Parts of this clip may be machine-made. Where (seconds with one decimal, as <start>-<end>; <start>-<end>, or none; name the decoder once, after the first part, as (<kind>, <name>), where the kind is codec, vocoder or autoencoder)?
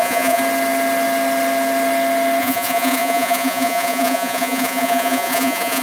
0.0-0.4 (vocoder, Vocos); 2.4-5.8